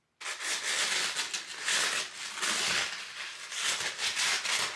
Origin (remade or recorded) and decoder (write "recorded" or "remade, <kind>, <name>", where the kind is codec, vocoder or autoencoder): recorded